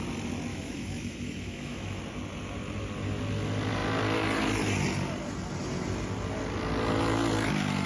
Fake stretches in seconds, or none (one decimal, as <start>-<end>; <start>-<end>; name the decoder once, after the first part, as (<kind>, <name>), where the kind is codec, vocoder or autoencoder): 0.5-2.0 (autoencoder, DAC-VAE)